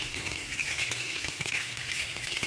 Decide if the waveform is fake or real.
fake